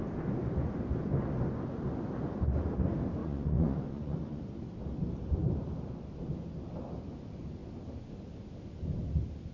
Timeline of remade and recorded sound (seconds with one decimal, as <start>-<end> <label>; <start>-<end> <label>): 0.0-3.2 recorded; 3.2-4.4 remade; 4.4-9.5 recorded